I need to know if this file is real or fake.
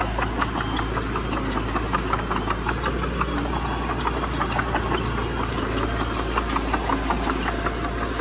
real